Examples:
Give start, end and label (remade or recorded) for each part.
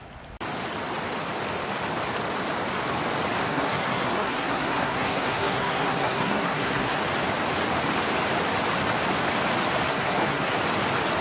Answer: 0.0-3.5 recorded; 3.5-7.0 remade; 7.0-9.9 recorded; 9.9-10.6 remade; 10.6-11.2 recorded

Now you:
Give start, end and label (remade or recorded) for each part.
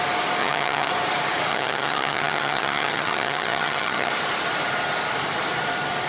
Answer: 0.0-0.4 recorded; 0.4-0.9 remade; 0.9-1.5 recorded; 1.5-4.1 remade; 4.1-6.1 recorded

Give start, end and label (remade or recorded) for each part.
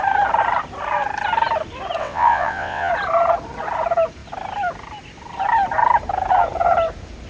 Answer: 0.0-2.0 recorded; 2.0-2.9 remade; 2.9-7.3 recorded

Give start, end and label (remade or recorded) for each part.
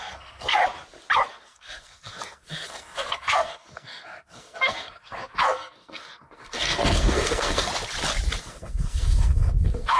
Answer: 0.0-0.6 remade; 0.6-1.3 recorded; 1.3-7.7 remade; 7.7-8.4 recorded; 8.4-10.0 remade